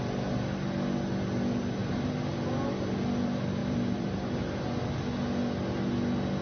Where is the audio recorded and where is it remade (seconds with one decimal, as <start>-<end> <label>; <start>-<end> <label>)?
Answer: 0.0-1.8 recorded; 1.8-2.4 remade; 2.4-3.6 recorded; 3.6-4.7 remade; 4.7-6.4 recorded